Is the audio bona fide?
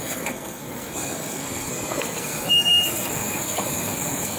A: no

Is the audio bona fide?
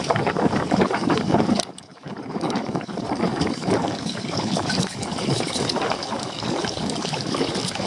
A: no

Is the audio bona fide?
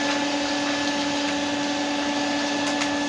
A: yes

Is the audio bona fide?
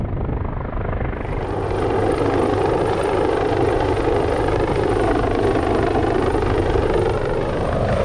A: yes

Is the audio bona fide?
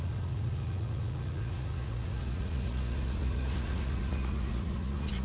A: no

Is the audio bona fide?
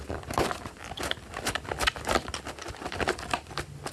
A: yes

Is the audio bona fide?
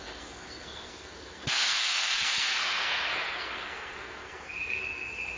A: no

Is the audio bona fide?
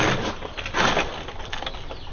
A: yes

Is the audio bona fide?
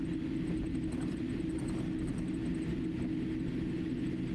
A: yes